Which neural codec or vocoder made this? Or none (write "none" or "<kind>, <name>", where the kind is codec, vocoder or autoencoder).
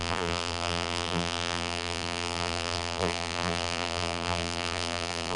vocoder, BigVGAN v2